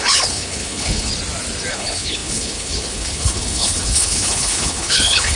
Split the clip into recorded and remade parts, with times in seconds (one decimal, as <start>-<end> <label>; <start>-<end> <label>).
0.0-1.1 remade; 1.1-1.7 recorded; 1.7-5.4 remade